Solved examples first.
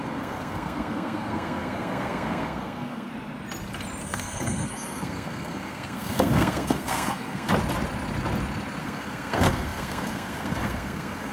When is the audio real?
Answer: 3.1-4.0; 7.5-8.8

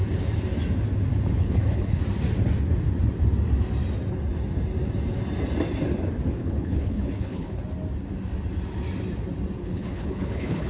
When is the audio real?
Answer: 0.0-1.4; 2.0-6.4; 7.6-9.6

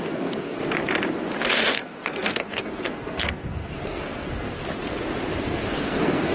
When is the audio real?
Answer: 0.6-1.5; 4.6-5.4

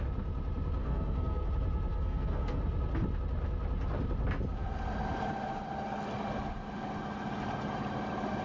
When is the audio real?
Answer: 0.0-0.8; 1.5-1.9; 2.6-8.4